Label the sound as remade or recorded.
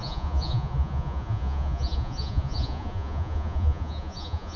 remade